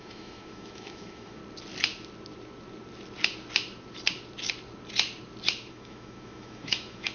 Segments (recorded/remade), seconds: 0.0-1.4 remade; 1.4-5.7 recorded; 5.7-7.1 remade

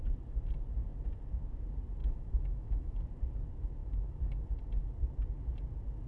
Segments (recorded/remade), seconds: 0.0-2.0 recorded; 2.0-3.0 remade; 3.0-3.8 recorded; 3.8-4.4 remade; 4.4-6.1 recorded

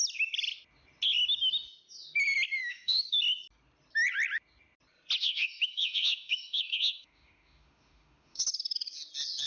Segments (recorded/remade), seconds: 0.0-2.6 recorded; 2.6-3.2 remade; 3.2-5.2 recorded; 5.2-8.4 remade; 8.4-9.5 recorded